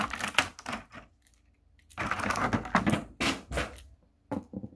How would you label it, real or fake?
real